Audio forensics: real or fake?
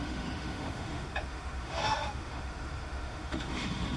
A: fake